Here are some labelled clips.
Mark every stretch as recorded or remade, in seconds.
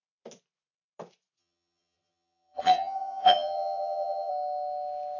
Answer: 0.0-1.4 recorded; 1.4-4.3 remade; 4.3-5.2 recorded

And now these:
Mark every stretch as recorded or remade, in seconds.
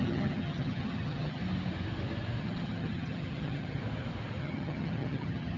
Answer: 0.0-1.4 remade; 1.4-2.4 recorded; 2.4-3.8 remade; 3.8-4.4 recorded; 4.4-5.6 remade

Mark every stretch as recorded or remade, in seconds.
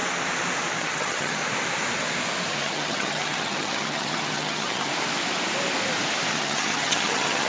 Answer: 0.0-0.8 recorded; 0.8-1.4 remade; 1.4-2.5 recorded; 2.5-4.9 remade; 4.9-6.3 recorded; 6.3-7.5 remade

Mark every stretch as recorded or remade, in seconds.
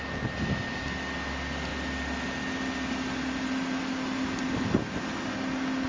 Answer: 0.0-5.9 recorded